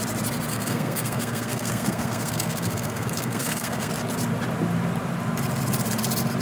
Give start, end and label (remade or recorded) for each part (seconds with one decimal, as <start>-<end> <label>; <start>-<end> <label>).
0.0-0.5 recorded; 0.5-3.9 remade; 3.9-6.4 recorded